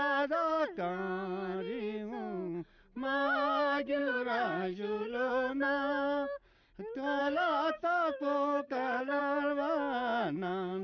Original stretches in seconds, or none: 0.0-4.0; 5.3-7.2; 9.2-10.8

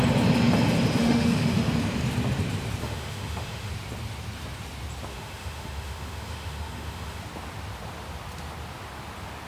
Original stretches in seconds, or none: 0.0-1.0; 1.7-2.8; 3.7-5.1; 7.2-9.5

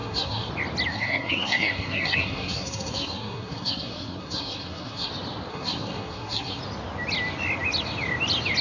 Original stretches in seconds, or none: 0.5-0.9; 5.1-5.5; 6.6-8.6